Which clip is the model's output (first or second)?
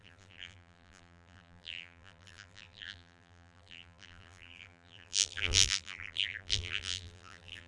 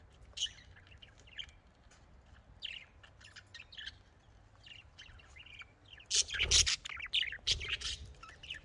first